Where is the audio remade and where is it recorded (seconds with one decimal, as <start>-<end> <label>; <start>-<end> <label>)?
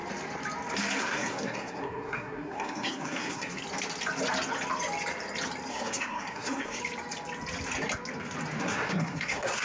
0.0-1.0 recorded; 1.0-3.6 remade; 3.6-5.7 recorded; 5.7-6.8 remade; 6.8-8.6 recorded; 8.6-9.6 remade